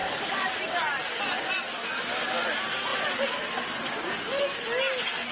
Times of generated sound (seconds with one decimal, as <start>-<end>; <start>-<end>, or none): 0.0-2.0